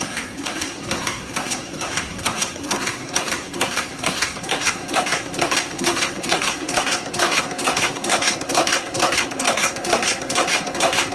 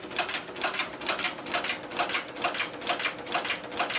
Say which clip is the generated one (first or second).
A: first